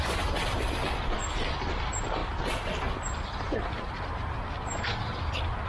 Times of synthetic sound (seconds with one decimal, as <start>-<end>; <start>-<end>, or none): none